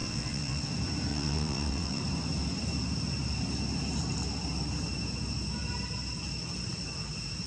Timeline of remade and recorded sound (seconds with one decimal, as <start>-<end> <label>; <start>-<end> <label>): 0.0-0.7 remade; 0.7-1.1 recorded; 1.1-2.0 remade; 2.0-7.5 recorded